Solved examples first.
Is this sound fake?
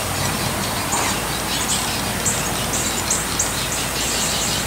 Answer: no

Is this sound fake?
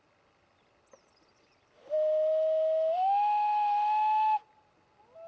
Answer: no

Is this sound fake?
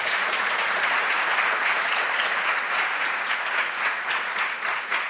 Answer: yes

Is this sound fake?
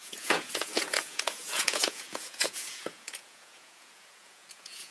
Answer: yes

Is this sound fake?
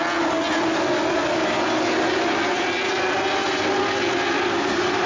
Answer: no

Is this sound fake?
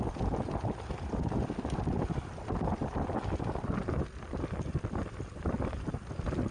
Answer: no